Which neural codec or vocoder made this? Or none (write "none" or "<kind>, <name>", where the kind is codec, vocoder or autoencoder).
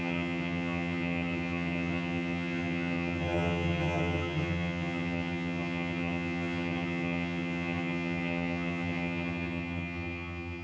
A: vocoder, HiFi-GAN